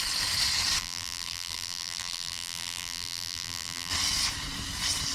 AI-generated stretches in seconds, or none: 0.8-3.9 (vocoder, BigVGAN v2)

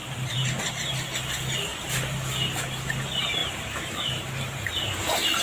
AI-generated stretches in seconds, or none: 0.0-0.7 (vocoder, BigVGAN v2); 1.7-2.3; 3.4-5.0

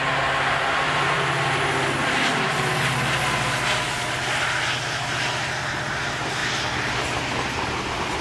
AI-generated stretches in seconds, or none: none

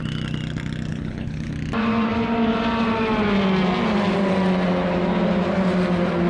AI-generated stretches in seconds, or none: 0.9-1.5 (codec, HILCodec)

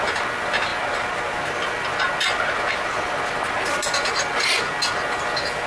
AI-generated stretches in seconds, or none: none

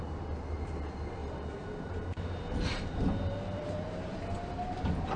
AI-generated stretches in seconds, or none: 1.2-4.2 (vocoder, BigVGAN v2)